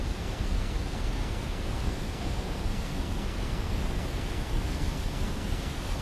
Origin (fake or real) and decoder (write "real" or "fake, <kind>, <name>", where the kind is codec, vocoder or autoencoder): fake, codec, SNAC